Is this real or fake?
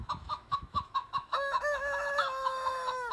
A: fake